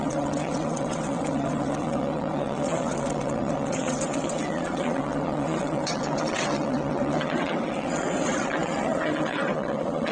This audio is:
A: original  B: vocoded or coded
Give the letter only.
B